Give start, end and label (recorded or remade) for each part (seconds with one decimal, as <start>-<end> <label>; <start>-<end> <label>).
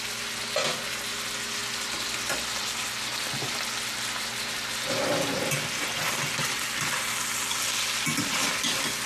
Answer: 0.0-9.1 recorded